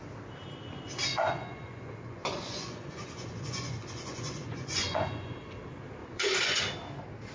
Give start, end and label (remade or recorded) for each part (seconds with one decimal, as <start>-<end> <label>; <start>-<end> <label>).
0.0-1.1 recorded; 1.1-5.5 remade; 5.5-6.0 recorded; 6.0-6.6 remade; 6.6-7.3 recorded